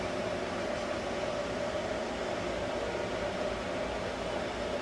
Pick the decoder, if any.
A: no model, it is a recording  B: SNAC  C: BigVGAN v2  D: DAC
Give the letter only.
A